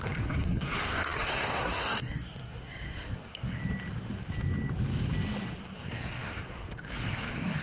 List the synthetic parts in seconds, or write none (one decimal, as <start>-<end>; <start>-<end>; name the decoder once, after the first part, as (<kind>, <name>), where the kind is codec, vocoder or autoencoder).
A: 0.0-3.6 (codec, SNAC); 5.6-7.6